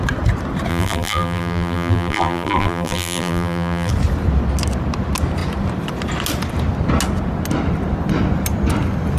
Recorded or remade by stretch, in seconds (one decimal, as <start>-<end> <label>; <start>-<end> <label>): 0.0-0.7 recorded; 0.7-3.9 remade; 3.9-9.2 recorded